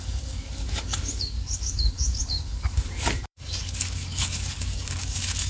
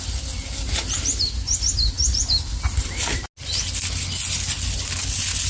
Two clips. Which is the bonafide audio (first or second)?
second